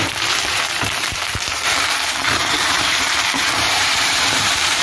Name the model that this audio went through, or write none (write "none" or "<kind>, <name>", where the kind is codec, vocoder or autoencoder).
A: vocoder, BigVGAN v2